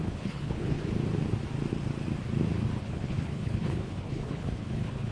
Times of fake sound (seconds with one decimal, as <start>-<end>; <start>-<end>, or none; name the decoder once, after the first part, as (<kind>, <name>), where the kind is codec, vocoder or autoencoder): 0.0-0.8 (codec, HILCodec); 2.8-5.1